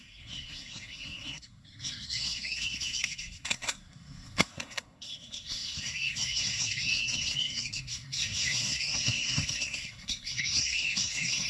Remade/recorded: remade